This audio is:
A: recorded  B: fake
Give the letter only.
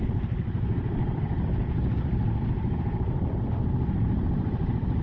B